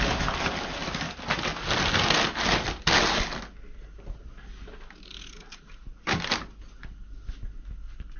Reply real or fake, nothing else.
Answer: real